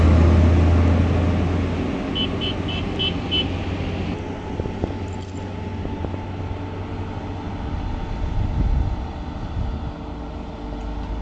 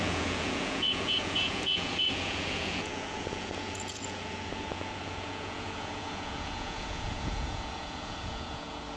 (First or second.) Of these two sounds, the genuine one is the first